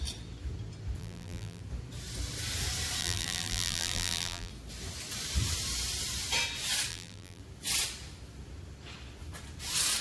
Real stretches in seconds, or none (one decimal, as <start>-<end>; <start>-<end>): 0.0-1.0; 1.6-3.0; 4.5-6.9; 7.4-10.0

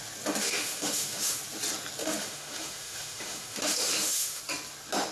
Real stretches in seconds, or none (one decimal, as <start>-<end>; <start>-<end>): 0.0-0.4; 1.4-2.0; 4.4-5.1

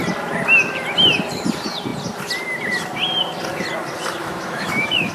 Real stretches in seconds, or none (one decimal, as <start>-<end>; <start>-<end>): 0.0-4.2

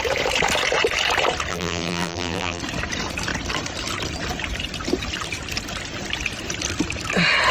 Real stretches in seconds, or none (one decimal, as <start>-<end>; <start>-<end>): 0.0-1.5; 2.6-7.5